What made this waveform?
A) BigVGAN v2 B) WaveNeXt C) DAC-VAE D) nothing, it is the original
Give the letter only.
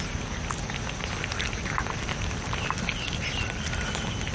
D